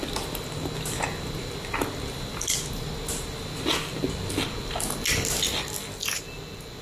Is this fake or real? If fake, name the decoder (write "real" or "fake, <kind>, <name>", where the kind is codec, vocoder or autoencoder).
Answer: real